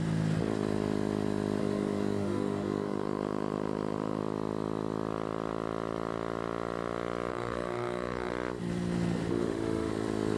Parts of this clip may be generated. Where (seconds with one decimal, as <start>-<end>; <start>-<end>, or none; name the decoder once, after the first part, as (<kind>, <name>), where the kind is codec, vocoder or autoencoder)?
1.6-4.2 (autoencoder, DAC-VAE); 7.3-8.3; 9.3-9.9